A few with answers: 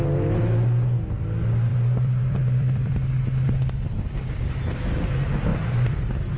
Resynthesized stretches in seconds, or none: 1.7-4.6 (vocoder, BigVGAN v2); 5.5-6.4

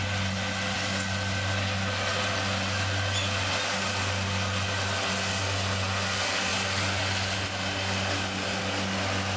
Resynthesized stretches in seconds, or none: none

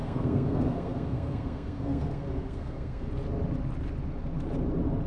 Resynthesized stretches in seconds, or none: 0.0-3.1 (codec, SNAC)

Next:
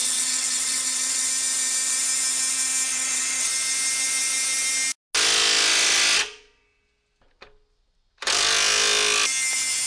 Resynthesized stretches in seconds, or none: 0.0-1.3 (vocoder, WaveNeXt); 2.9-3.5